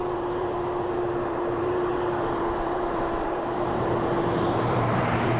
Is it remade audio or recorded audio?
remade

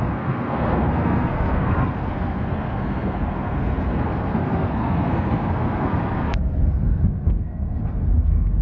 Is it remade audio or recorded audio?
remade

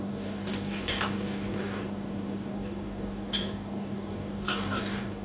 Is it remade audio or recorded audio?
remade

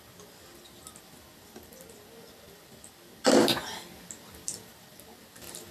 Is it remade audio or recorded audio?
recorded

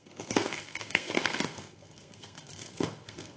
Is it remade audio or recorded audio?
remade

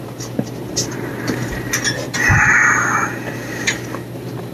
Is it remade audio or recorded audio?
recorded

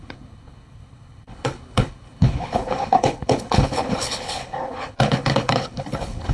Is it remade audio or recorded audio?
remade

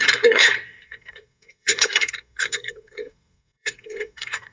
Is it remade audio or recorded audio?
remade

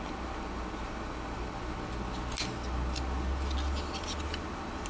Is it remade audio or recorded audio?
recorded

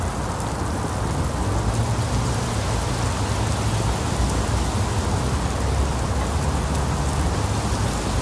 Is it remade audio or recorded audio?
recorded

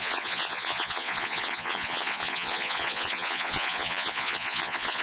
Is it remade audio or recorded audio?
remade